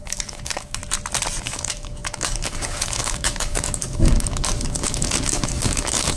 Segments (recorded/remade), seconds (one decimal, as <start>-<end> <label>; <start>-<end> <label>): 0.0-0.8 remade; 0.8-1.4 recorded; 1.4-6.2 remade